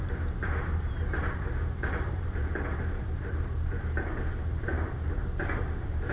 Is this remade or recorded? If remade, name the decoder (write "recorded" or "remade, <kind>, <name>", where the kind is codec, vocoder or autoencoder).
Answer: remade, vocoder, BigVGAN v2